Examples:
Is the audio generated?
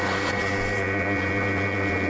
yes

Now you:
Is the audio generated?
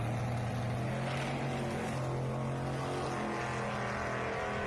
no